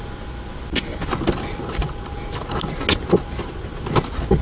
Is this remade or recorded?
recorded